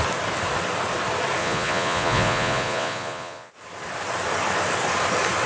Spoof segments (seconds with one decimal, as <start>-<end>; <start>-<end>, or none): 1.4-3.5